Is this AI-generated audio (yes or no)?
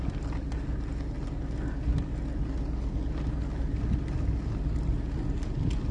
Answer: no